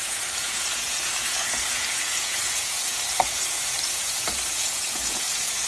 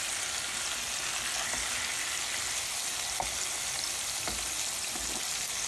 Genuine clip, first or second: second